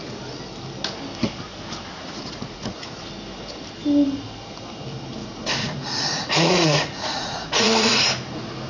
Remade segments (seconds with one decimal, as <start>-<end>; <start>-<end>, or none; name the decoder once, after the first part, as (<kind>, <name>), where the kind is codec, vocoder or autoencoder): 1.9-3.0 (vocoder, Vocos); 5.2-8.0